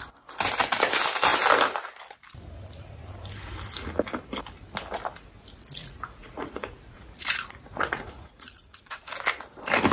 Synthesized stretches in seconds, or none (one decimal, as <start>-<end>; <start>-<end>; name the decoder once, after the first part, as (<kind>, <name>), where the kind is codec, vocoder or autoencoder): 5.8-9.1 (vocoder, Vocos)